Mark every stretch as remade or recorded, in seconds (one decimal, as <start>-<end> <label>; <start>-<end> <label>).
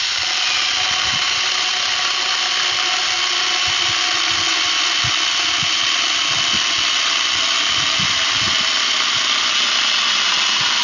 0.0-10.8 recorded